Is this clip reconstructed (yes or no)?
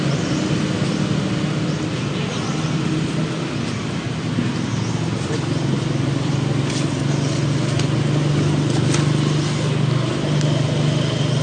no